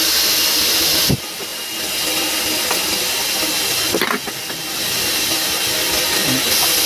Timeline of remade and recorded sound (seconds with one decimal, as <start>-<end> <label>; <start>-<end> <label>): 0.0-6.9 recorded